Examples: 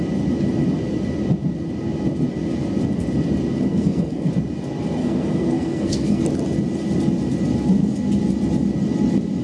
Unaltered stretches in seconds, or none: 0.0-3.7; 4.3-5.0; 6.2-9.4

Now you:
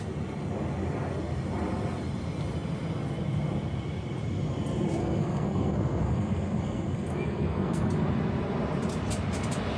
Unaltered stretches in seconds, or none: 0.0-5.0; 7.9-9.8

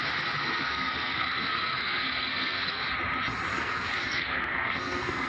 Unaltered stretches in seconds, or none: 0.0-0.4; 2.8-3.5

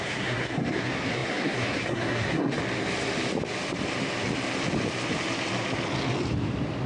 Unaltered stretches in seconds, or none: 2.6-6.9

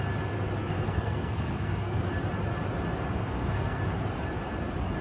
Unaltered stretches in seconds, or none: 0.0-0.6; 2.0-3.2; 3.8-5.0